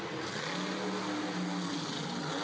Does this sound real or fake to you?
real